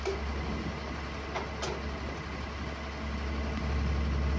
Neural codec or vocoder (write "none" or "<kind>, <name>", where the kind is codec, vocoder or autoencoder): none